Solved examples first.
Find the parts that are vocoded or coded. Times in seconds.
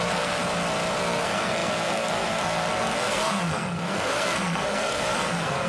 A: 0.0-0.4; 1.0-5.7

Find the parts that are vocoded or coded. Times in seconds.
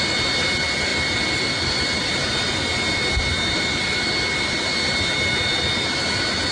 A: none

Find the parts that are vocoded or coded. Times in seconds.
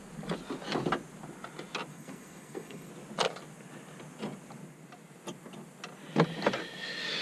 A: 1.9-2.9